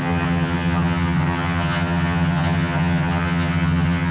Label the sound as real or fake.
fake